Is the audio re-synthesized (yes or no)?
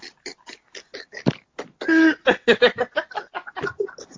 no